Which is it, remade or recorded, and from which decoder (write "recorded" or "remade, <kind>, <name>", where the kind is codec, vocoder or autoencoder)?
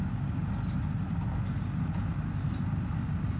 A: recorded